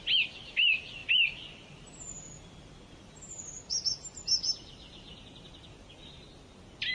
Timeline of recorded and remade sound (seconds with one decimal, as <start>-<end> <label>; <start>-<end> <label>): 0.0-6.9 recorded